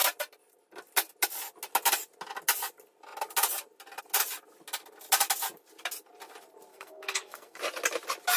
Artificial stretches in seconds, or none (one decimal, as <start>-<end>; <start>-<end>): 6.7-7.6